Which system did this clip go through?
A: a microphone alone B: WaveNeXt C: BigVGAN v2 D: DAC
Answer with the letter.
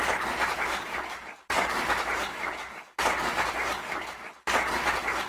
D